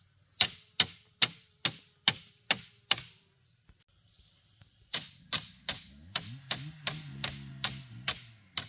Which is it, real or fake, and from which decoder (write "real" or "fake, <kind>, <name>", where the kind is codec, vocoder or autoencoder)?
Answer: real